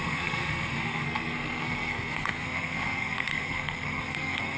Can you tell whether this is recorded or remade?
remade